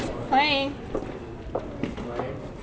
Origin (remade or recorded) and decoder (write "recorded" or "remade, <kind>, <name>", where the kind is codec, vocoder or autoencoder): recorded